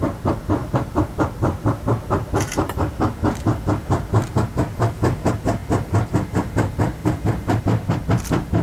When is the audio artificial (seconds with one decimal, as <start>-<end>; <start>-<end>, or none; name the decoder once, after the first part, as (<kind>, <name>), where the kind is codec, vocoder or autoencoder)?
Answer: 0.6-2.9 (vocoder, BigVGAN v2); 7.0-7.6

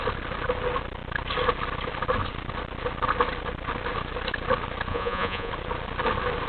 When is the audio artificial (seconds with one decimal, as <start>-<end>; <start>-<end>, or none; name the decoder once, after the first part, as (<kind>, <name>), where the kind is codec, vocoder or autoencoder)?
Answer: 4.9-5.5 (vocoder, Vocos)